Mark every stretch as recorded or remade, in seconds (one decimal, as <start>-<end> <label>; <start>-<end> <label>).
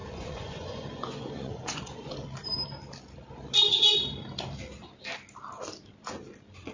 0.0-2.1 remade; 2.1-6.7 recorded